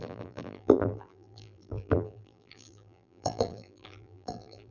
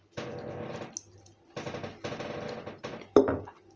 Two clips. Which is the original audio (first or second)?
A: second